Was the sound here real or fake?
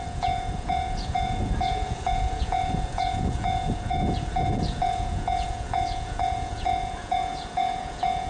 fake